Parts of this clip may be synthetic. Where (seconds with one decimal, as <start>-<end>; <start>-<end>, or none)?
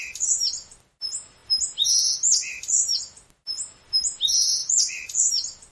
4.6-5.3